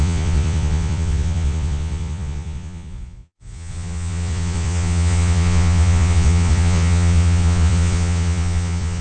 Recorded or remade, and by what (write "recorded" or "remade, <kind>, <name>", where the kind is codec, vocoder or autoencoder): remade, vocoder, Vocos